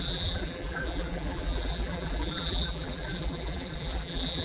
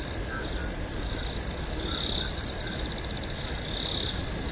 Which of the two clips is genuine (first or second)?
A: second